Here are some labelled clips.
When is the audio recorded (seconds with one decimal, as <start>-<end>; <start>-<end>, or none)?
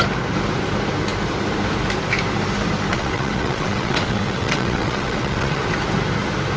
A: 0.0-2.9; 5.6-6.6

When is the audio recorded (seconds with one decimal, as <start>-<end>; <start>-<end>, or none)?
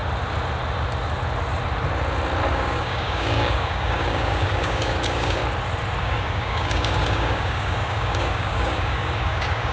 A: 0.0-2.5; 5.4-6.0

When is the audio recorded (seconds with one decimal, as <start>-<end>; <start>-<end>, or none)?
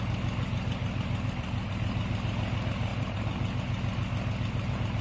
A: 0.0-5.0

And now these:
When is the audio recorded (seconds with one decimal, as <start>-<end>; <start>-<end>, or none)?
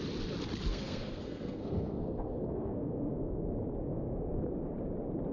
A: 0.0-0.7; 3.4-3.8; 4.4-5.3